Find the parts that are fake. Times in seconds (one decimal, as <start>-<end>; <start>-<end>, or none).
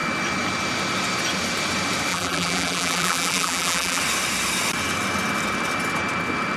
2.1-4.0